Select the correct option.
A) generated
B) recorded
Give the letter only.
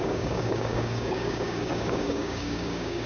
A